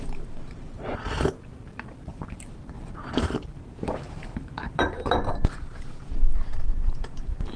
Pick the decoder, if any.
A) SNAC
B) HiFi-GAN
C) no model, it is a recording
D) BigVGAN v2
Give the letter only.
D